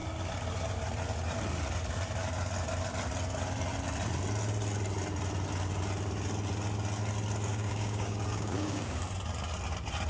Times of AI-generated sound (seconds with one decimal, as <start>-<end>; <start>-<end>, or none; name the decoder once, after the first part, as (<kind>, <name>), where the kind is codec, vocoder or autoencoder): 7.5-9.0 (codec, DAC)